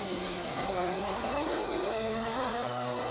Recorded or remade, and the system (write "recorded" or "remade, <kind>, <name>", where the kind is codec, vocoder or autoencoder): remade, codec, SNAC